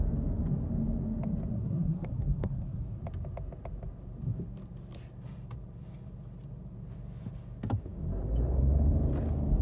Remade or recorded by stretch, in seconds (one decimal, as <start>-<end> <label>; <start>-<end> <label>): 0.0-1.5 recorded; 1.5-3.0 remade; 3.0-9.6 recorded